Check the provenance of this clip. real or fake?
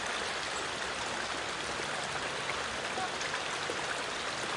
fake